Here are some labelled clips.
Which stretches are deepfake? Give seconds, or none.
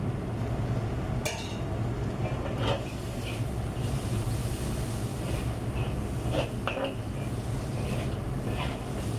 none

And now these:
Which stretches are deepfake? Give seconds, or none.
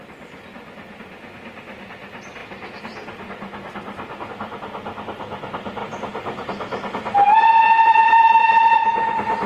none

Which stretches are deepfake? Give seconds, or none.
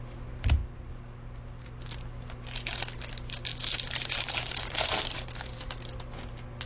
3.5-5.3 (vocoder, BigVGAN v2)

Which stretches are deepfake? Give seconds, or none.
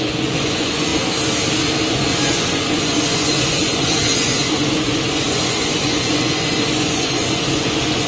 0.0-0.9 (vocoder, Vocos); 1.9-8.1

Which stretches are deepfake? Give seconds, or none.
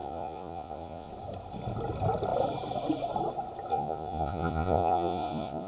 0.0-1.1 (vocoder, Vocos); 3.7-5.7